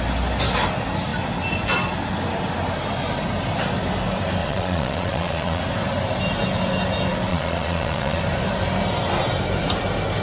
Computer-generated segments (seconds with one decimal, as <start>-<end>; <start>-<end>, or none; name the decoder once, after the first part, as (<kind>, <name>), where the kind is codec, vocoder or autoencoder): 4.4-5.6 (vocoder, Vocos); 7.3-8.2